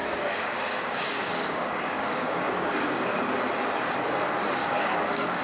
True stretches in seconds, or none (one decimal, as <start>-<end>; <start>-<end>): 3.2-4.6